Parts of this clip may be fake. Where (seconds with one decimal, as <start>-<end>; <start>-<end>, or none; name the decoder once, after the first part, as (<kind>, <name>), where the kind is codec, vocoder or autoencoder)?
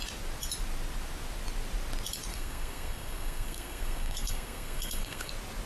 2.3-5.3 (codec, SNAC)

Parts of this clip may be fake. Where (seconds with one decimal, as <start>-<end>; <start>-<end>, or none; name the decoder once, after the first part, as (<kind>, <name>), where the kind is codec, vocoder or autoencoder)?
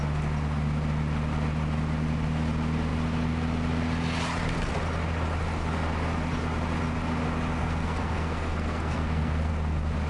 7.6-9.5 (codec, SNAC)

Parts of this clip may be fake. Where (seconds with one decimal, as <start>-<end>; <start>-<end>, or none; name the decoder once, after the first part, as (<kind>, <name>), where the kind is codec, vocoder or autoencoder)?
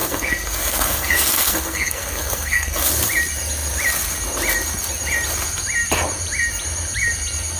0.0-2.9 (codec, SNAC)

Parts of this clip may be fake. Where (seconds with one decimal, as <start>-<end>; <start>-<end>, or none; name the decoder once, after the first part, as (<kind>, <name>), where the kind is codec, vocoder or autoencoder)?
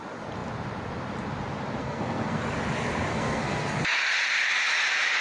1.8-2.4 (codec, SNAC); 3.1-3.8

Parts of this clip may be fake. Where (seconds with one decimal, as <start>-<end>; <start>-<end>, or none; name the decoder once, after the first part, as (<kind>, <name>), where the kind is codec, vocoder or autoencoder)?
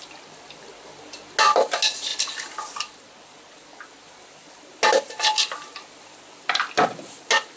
none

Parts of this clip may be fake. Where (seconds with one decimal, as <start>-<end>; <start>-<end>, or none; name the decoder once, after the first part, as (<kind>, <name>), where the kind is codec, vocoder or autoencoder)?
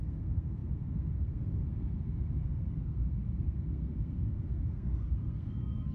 0.0-5.9 (codec, SNAC)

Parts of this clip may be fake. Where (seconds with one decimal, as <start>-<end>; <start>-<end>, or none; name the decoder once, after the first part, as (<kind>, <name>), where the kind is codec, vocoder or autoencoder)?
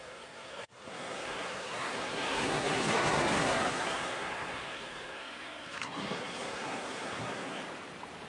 0.0-7.6 (codec, SNAC)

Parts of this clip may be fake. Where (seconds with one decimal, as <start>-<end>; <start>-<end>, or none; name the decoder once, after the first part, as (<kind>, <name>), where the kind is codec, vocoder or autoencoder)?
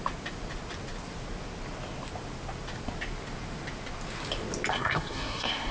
4.7-5.7 (codec, SNAC)